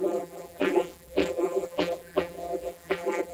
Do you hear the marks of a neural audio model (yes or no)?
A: yes